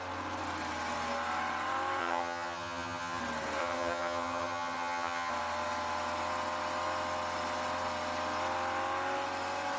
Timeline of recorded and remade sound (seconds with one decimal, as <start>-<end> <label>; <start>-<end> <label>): 0.0-2.0 recorded; 2.0-3.2 remade; 3.2-3.6 recorded; 3.6-5.3 remade; 5.3-9.8 recorded